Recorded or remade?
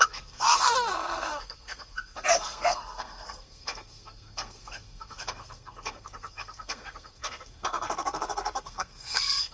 remade